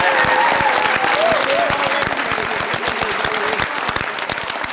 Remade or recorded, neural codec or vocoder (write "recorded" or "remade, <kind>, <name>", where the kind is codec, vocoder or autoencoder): recorded